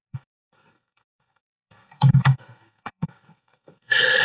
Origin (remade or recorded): remade